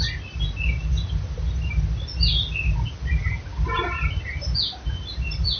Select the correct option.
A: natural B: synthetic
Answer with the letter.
A